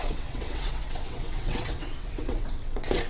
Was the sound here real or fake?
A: fake